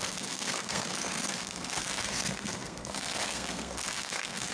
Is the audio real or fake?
fake